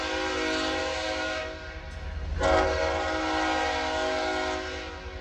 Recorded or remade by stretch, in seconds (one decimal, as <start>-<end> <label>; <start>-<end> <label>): 0.0-0.8 recorded; 0.8-1.4 remade; 1.4-5.2 recorded

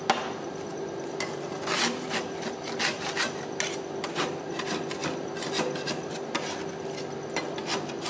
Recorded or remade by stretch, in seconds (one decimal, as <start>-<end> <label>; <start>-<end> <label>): 0.0-8.1 recorded

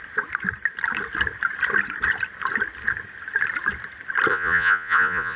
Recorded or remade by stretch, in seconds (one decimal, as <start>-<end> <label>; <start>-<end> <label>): 0.0-4.3 recorded; 4.3-5.4 remade